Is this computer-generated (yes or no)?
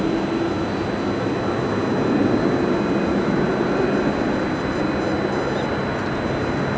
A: no